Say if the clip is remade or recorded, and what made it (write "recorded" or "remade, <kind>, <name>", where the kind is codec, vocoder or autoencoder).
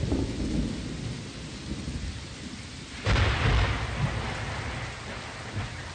recorded